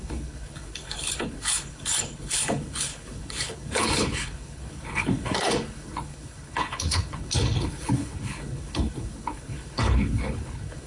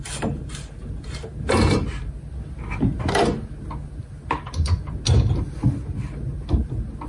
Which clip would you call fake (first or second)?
first